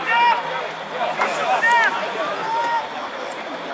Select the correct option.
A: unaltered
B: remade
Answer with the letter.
A